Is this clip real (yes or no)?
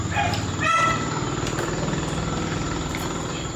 yes